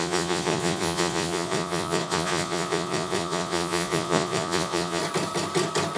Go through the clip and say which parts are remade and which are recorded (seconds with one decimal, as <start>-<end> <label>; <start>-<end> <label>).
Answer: 0.0-5.0 remade; 5.0-6.0 recorded